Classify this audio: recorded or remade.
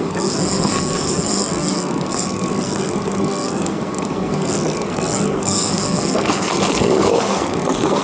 remade